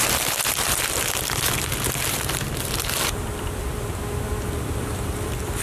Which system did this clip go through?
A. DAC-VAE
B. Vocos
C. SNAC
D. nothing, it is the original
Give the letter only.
D